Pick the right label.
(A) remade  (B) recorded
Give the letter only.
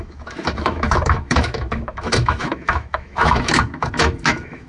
A